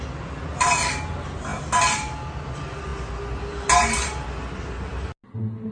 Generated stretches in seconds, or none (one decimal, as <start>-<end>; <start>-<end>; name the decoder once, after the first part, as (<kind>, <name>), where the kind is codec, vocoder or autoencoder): none